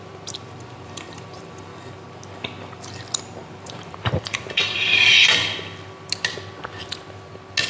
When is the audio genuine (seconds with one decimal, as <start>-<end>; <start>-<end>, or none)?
1.7-3.2; 5.4-7.7